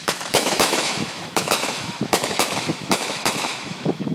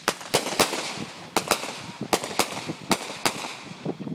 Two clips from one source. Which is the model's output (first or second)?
first